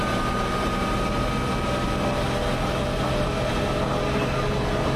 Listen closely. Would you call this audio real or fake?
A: real